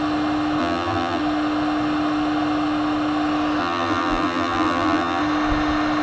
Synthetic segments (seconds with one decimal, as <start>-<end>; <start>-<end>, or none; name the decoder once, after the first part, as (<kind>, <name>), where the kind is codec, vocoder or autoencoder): 0.6-1.2 (vocoder, BigVGAN v2); 3.6-5.2